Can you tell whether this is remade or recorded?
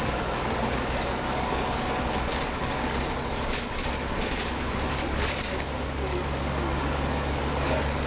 remade